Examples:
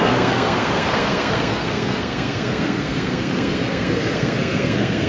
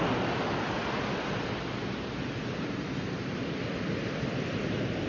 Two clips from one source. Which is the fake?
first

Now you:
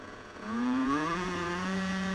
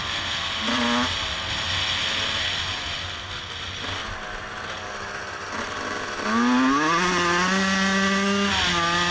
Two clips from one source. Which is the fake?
first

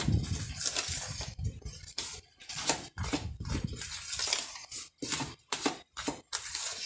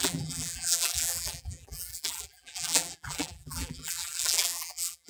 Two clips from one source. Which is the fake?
second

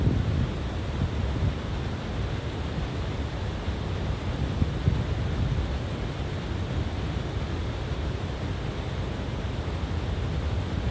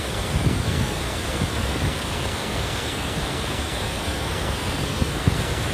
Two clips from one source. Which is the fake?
second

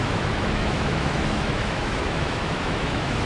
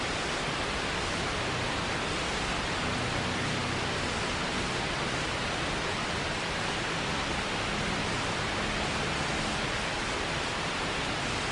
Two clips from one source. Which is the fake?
first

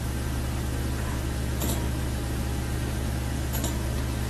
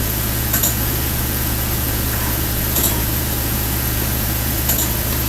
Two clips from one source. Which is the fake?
second